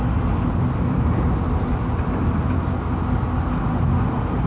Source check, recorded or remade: recorded